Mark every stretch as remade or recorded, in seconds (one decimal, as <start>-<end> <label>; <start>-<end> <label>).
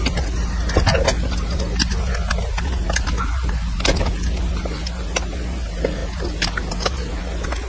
0.0-7.7 recorded